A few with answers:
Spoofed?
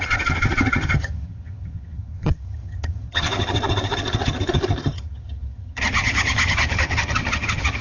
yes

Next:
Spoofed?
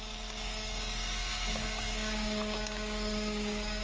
yes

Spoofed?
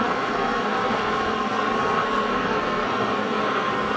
yes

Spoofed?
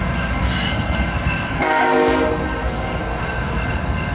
yes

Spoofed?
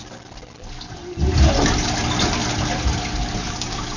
no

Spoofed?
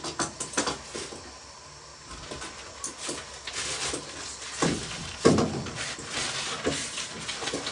no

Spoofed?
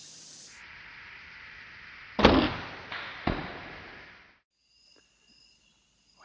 no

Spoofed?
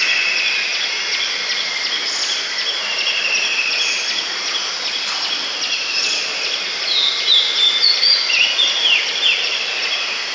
no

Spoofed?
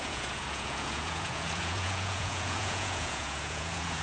yes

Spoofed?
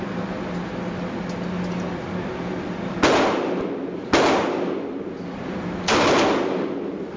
no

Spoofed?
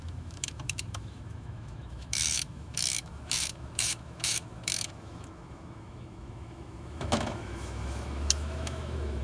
yes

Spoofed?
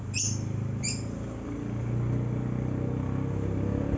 no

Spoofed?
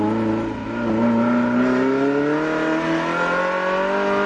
no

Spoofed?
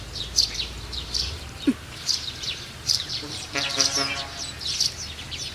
yes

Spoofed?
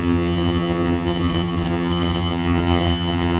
yes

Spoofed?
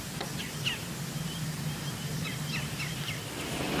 no